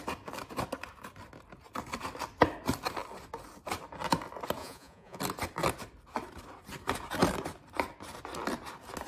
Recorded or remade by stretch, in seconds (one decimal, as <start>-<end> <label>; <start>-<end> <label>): 0.0-4.6 recorded; 4.6-5.2 remade; 5.2-9.1 recorded